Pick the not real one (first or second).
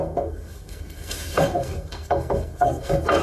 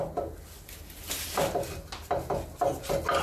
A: first